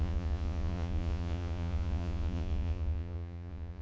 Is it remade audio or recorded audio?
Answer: remade